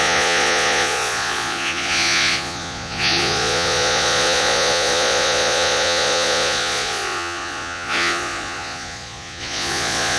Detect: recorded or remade remade